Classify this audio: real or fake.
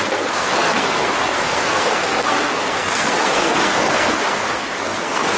fake